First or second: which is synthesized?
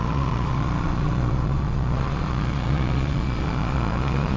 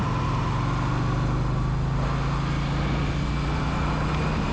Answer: first